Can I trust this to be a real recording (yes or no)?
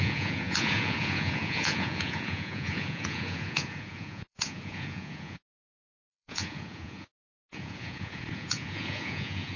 no